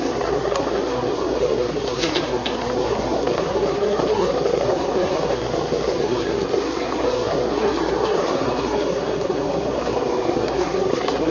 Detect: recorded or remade remade